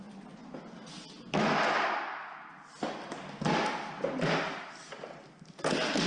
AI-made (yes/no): no